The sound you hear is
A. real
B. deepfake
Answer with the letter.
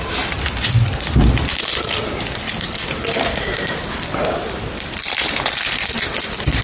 B